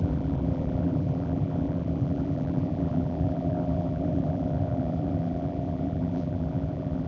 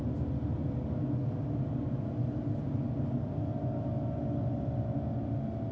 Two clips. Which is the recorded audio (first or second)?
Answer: second